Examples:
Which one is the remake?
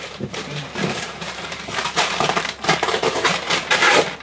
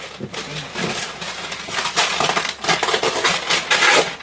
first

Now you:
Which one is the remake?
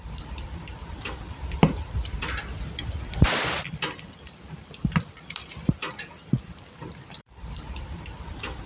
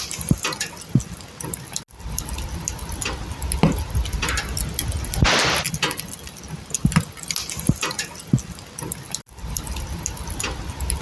first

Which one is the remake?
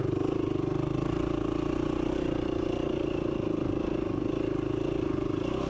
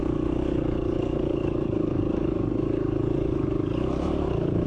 second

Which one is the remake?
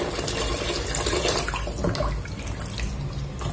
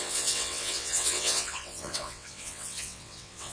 second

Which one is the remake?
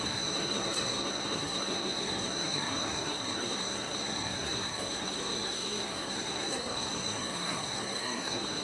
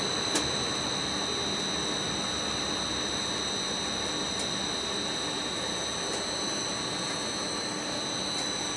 first